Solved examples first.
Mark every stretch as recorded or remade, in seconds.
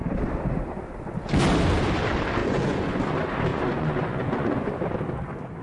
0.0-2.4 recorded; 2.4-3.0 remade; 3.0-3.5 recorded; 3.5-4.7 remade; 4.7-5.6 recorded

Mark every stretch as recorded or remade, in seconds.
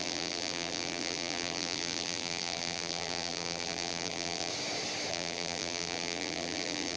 0.0-4.5 remade; 4.5-5.1 recorded; 5.1-7.0 remade